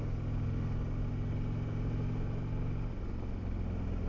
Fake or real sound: real